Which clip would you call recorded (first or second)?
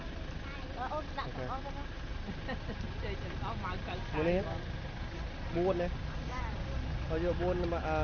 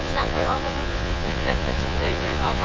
first